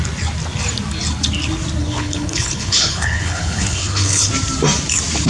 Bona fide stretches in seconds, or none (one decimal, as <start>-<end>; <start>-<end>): 0.0-1.8; 4.3-5.3